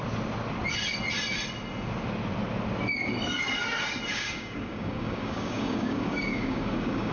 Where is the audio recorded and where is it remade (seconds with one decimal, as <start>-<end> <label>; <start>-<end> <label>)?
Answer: 0.0-4.1 recorded; 4.1-7.1 remade